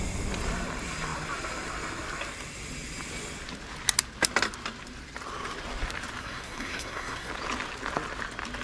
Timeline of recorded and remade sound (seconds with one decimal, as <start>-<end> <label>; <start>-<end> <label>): 0.0-6.2 recorded; 6.2-7.3 remade; 7.3-8.6 recorded